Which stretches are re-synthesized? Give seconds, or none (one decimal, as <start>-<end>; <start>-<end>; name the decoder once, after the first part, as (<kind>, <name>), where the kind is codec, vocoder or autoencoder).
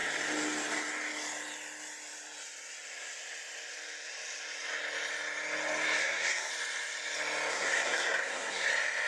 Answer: 6.0-6.5 (codec, SNAC); 7.5-8.7